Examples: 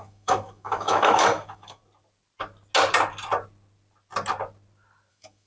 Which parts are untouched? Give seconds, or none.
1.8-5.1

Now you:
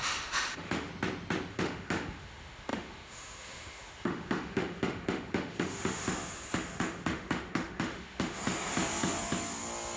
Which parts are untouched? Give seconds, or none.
0.9-1.5; 8.4-10.0

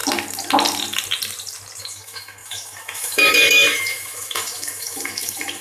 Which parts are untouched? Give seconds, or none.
0.0-1.8

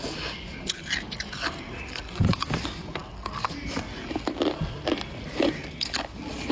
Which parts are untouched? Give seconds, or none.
0.0-6.5

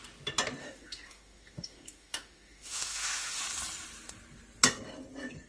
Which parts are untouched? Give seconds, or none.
0.0-0.6; 3.4-5.5

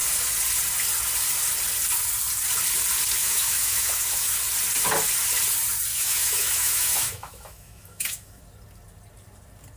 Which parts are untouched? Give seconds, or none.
0.0-3.2; 4.4-5.9; 8.4-9.8

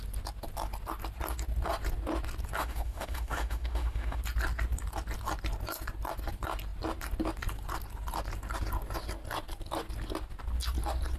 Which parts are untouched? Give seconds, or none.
0.0-2.6; 4.2-11.2